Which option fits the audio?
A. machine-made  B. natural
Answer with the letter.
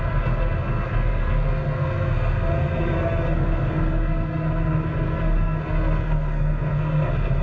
A